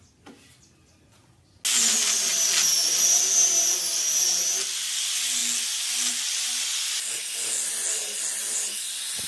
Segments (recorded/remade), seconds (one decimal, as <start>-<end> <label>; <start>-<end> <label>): 0.0-9.3 recorded